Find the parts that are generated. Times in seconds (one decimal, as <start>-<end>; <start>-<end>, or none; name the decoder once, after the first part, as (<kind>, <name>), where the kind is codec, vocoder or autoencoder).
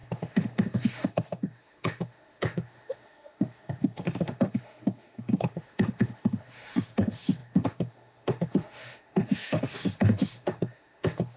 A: 0.0-11.4 (autoencoder, DAC-VAE)